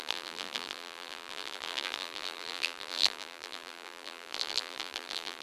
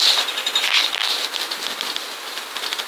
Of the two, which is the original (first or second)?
second